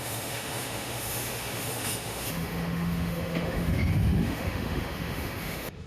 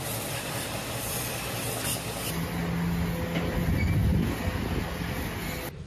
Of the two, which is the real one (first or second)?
second